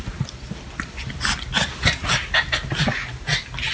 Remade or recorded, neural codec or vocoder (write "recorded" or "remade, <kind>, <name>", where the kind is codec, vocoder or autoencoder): recorded